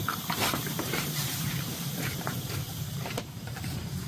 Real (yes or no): no